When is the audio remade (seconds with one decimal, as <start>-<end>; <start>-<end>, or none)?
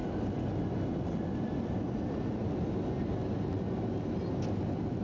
none